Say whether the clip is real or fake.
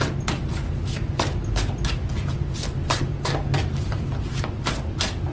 real